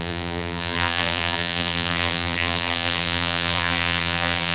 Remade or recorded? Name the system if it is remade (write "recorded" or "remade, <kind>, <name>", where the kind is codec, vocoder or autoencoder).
remade, vocoder, BigVGAN v2